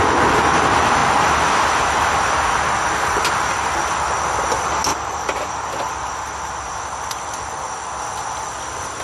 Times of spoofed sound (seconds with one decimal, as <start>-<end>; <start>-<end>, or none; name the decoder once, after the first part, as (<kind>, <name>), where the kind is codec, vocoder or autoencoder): none